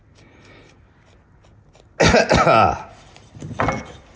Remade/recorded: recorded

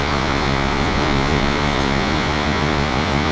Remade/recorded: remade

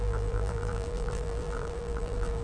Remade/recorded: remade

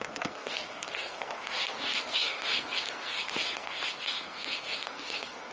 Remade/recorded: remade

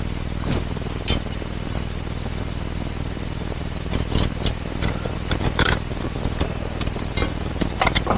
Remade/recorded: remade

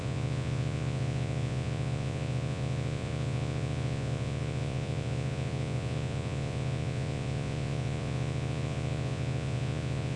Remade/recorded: remade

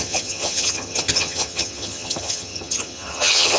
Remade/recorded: remade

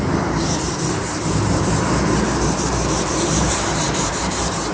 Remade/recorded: remade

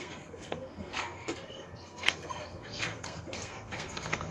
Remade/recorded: remade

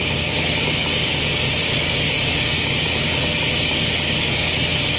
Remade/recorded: remade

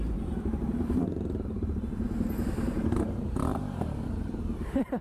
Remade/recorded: remade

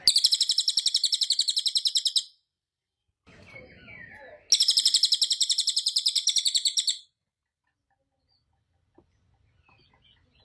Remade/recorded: recorded